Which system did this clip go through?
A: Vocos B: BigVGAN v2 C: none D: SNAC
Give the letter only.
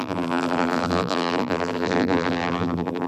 B